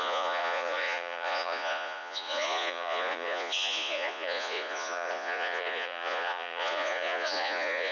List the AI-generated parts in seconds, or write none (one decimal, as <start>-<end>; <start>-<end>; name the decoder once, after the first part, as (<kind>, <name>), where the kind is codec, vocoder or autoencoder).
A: 0.0-7.9 (vocoder, Vocos)